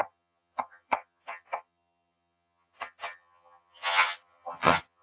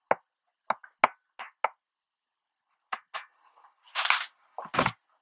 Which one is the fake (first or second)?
first